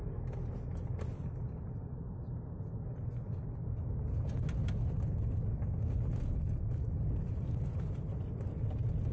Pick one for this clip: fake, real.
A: real